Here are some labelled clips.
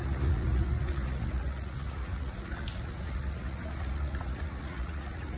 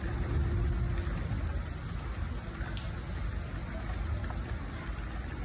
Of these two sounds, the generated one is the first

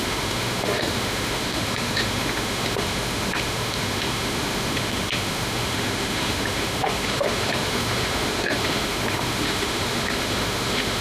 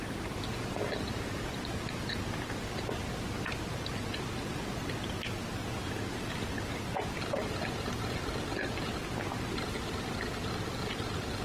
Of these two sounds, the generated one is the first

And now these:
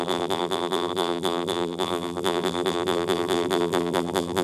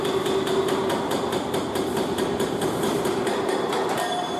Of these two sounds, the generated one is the first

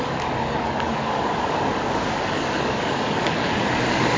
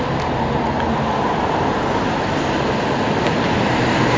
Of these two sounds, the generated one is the first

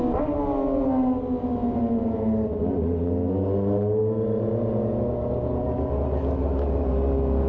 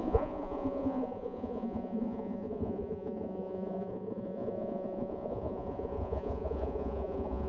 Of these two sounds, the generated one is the second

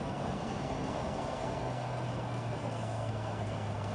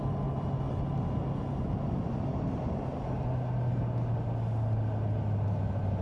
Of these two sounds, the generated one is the first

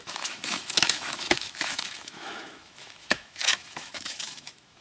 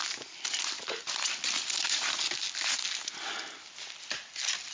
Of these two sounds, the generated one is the first